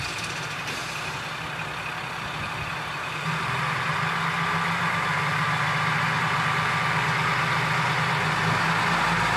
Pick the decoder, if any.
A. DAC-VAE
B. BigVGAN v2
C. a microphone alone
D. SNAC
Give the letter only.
C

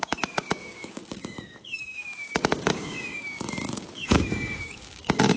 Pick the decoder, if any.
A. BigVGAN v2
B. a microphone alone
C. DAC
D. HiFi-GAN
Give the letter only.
C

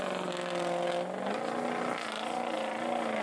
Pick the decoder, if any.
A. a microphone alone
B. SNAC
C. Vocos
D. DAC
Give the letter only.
A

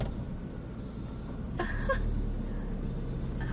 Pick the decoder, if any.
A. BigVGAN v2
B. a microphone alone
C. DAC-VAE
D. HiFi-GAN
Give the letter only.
B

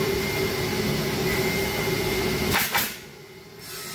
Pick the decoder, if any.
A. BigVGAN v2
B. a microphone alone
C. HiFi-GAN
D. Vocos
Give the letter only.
B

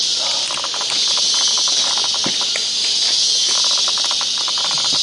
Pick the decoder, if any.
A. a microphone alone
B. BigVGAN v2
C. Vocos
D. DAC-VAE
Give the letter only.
A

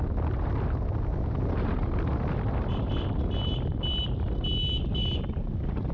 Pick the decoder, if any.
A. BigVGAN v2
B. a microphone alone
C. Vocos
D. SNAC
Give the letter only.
B